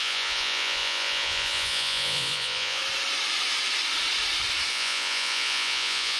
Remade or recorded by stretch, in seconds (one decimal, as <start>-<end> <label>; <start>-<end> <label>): 0.0-2.8 remade; 2.8-4.7 recorded; 4.7-6.2 remade